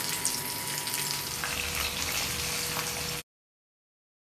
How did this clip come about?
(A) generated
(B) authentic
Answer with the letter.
B